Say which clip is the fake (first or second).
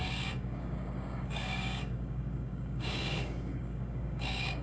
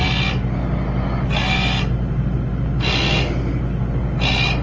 first